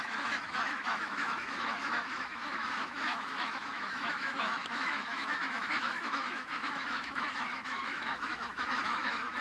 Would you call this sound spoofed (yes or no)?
yes